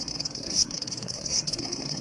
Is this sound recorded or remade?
remade